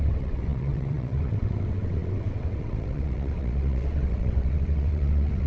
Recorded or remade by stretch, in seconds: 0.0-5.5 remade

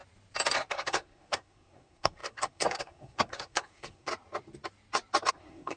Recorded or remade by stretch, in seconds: 0.0-0.7 recorded; 0.7-4.1 remade; 4.1-5.3 recorded; 5.3-5.8 remade

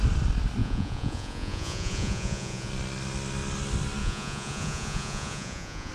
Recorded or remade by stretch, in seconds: 0.0-0.6 recorded; 0.6-2.7 remade; 2.7-4.0 recorded; 4.0-5.9 remade

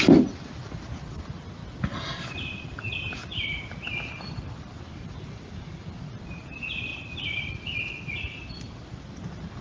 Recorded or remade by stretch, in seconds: 0.0-6.9 recorded; 6.9-7.5 remade; 7.5-9.6 recorded

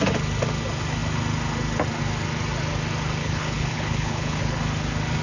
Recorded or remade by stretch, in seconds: 0.0-3.2 recorded; 3.2-4.6 remade; 4.6-5.2 recorded

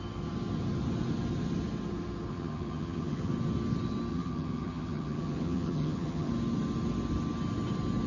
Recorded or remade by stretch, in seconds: 0.0-2.3 recorded; 2.3-3.3 remade; 3.3-4.1 recorded; 4.1-6.3 remade; 6.3-8.1 recorded

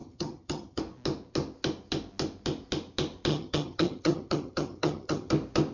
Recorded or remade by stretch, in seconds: 0.0-0.8 remade; 0.8-3.3 recorded; 3.3-5.3 remade; 5.3-5.7 recorded

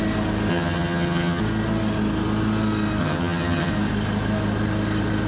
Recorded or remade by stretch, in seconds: 0.0-0.5 recorded; 0.5-1.4 remade; 1.4-3.0 recorded; 3.0-3.7 remade; 3.7-5.3 recorded